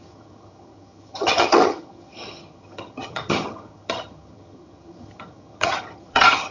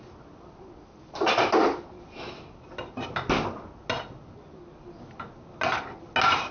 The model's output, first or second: first